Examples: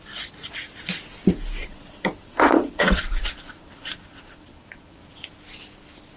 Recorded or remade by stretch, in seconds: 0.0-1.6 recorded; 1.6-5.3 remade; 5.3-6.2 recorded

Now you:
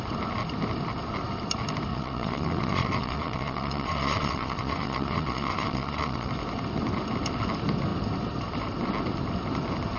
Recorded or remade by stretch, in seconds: 0.0-1.9 recorded; 1.9-6.3 remade; 6.3-10.0 recorded

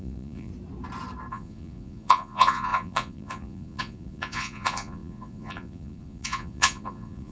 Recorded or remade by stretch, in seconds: 0.0-0.5 remade; 0.5-1.3 recorded; 1.3-7.3 remade

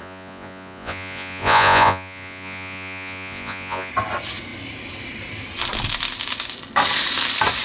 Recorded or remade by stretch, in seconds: 0.0-3.9 remade; 3.9-7.6 recorded

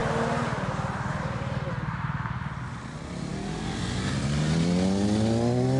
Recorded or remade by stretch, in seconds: 0.0-5.8 recorded